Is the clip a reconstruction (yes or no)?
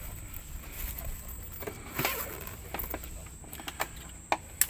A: no